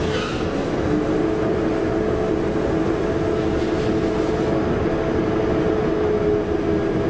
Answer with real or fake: real